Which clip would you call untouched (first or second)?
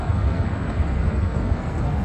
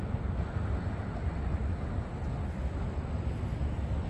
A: second